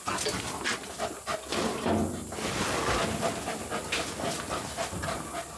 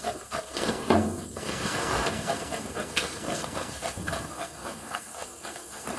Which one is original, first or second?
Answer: first